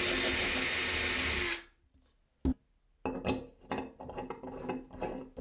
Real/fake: real